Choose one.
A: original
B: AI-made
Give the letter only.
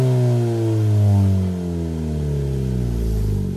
A